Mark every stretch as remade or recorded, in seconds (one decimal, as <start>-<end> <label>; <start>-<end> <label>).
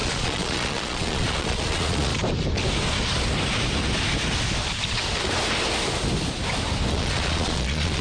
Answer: 0.0-2.1 remade; 2.1-6.9 recorded; 6.9-8.0 remade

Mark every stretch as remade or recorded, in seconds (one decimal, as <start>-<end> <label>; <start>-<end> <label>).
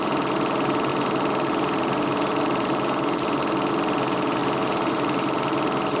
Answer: 0.0-6.0 recorded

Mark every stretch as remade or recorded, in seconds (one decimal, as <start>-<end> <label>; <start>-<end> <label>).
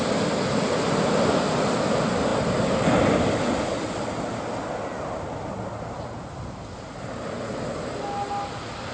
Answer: 0.0-8.9 recorded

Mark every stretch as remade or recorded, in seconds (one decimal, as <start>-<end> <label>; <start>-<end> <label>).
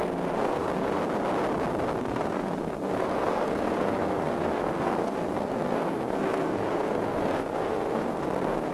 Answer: 0.0-1.0 remade; 1.0-2.0 recorded; 2.0-8.7 remade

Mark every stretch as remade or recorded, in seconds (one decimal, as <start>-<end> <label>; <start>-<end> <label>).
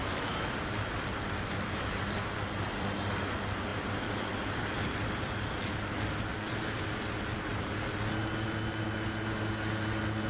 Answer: 0.0-3.3 remade; 3.3-3.7 recorded; 3.7-4.5 remade; 4.5-10.3 recorded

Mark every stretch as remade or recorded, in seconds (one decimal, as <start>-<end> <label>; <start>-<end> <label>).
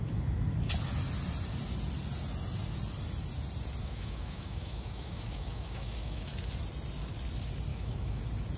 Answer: 0.0-3.8 recorded; 3.8-6.3 remade; 6.3-7.7 recorded; 7.7-8.2 remade; 8.2-8.6 recorded